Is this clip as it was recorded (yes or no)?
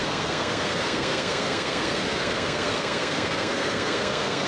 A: no